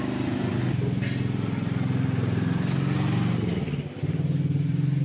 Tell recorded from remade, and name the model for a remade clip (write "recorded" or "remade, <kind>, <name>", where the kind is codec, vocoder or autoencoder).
recorded